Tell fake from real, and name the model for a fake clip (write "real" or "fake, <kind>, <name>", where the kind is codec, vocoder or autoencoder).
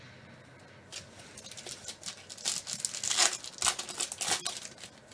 real